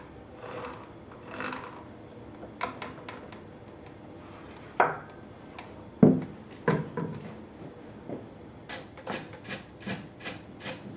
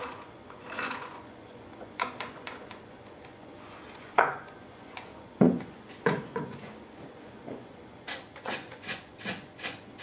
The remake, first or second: second